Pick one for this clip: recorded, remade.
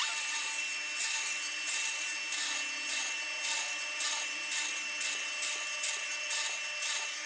recorded